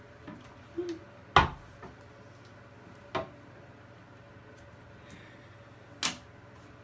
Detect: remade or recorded recorded